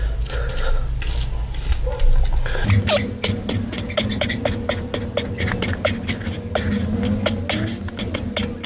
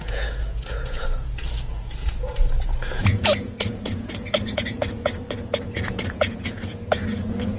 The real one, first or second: first